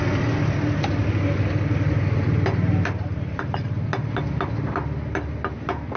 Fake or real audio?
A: real